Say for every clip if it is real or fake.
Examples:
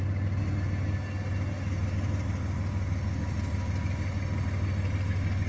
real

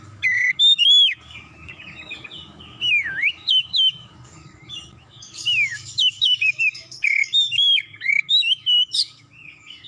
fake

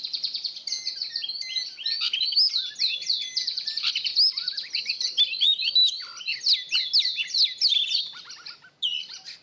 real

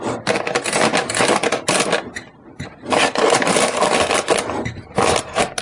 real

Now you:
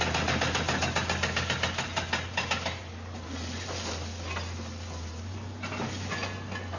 real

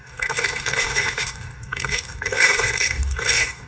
fake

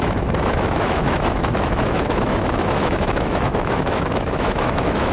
fake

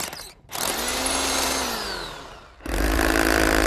real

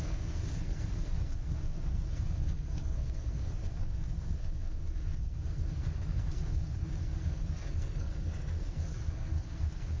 fake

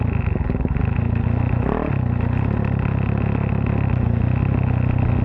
real